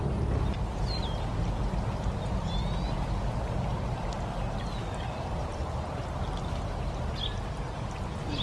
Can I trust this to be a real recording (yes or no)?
yes